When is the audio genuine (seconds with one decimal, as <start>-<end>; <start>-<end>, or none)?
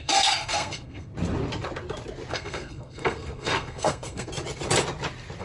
1.1-2.3; 4.3-5.4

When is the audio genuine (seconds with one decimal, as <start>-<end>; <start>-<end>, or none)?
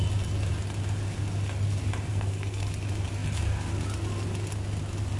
0.0-2.1; 2.7-5.2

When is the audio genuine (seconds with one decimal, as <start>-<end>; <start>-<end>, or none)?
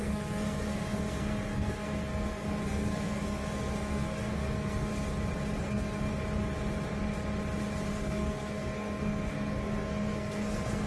4.9-5.6; 6.1-7.9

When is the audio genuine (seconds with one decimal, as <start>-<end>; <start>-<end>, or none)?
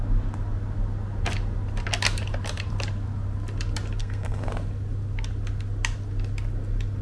0.0-4.0; 4.5-7.0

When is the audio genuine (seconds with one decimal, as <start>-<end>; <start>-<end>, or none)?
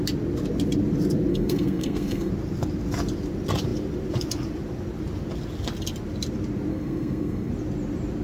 0.0-1.3; 2.3-6.7; 7.5-8.2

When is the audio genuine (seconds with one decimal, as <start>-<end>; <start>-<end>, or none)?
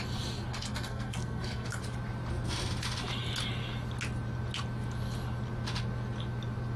0.0-0.5; 1.8-6.8